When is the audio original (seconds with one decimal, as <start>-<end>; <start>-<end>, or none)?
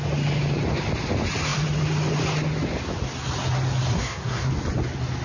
0.0-3.9; 4.5-5.2